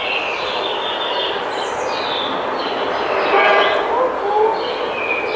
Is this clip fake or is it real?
real